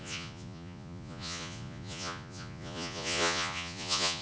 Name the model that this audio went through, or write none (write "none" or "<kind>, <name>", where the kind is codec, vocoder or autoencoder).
vocoder, Vocos